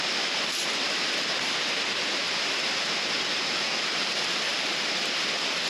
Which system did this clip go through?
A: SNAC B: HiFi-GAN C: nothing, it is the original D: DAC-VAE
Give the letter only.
C